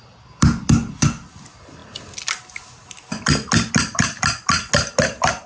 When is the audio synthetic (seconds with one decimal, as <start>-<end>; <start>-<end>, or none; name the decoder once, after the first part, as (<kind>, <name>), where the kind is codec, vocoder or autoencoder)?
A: none